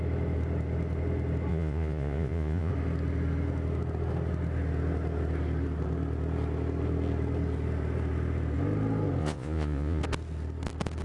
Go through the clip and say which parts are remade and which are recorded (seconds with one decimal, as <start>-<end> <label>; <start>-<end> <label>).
0.0-1.5 recorded; 1.5-2.7 remade; 2.7-9.2 recorded; 9.2-10.0 remade; 10.0-11.0 recorded